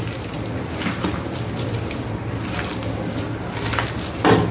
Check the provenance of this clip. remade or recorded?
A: recorded